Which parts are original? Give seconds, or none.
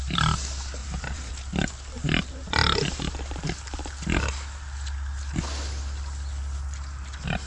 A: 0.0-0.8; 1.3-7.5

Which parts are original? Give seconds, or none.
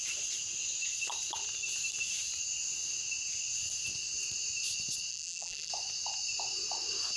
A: 0.0-5.1; 5.7-7.2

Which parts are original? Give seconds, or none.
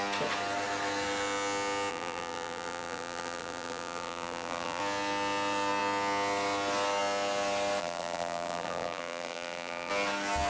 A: 0.0-1.9; 4.8-7.8; 9.9-10.5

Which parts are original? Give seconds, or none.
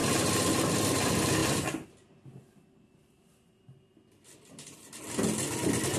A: 0.0-6.0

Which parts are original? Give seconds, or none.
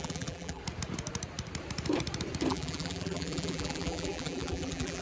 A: 0.6-2.5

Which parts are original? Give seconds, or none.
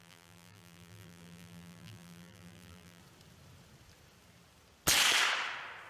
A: 3.0-5.9